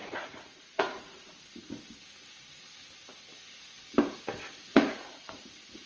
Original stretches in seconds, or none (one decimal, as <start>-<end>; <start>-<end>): 1.3-4.7